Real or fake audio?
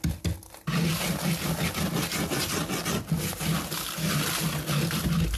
real